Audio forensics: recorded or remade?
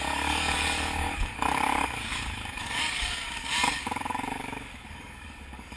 remade